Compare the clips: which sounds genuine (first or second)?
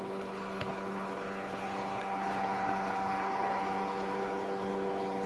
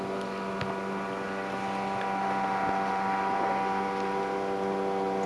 second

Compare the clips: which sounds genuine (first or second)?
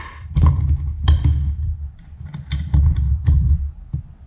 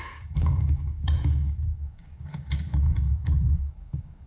first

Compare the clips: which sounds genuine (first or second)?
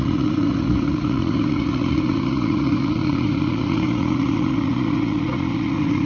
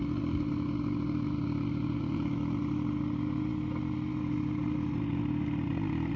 second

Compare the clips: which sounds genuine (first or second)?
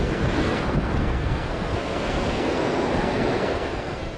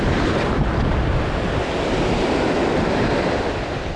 second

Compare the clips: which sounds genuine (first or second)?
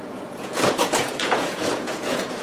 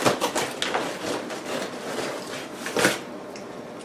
second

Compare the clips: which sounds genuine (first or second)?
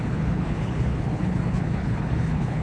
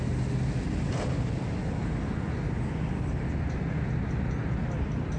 second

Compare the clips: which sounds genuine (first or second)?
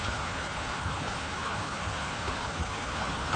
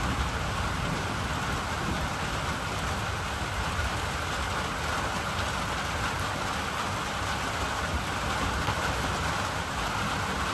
second